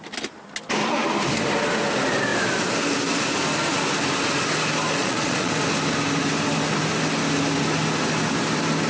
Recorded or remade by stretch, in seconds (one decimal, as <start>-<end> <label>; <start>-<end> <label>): 0.0-5.0 recorded; 5.0-5.5 remade; 5.5-8.9 recorded